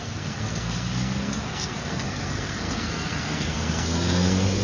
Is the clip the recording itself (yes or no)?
no